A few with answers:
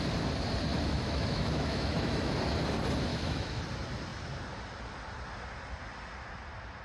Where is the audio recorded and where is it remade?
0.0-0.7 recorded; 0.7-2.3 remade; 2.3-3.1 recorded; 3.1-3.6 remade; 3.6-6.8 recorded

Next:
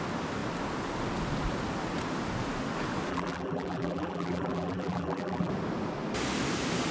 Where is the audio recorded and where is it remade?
0.0-3.1 recorded; 3.1-5.5 remade; 5.5-6.9 recorded